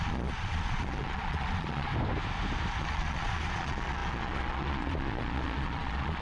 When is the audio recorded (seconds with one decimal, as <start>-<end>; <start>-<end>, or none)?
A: 1.9-2.8